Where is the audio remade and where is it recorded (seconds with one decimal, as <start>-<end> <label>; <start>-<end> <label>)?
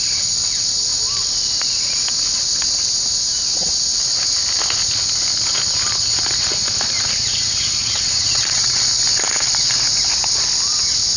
0.0-7.8 recorded; 7.8-8.8 remade; 8.8-11.2 recorded